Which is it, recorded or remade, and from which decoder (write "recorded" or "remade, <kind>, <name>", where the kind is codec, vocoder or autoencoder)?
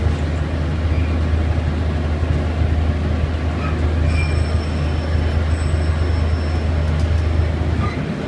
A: recorded